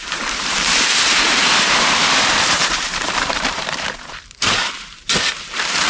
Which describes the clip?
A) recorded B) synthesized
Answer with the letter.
B